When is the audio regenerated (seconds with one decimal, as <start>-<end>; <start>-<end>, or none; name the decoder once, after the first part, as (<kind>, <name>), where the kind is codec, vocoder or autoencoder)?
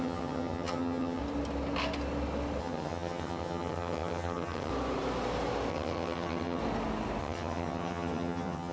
0.0-1.2 (vocoder, HiFi-GAN); 2.6-4.7; 5.7-6.6; 7.2-8.7